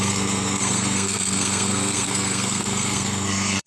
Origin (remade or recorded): remade